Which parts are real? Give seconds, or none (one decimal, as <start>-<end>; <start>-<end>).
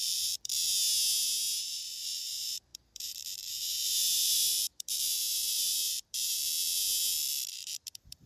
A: 0.5-1.6; 6.4-7.5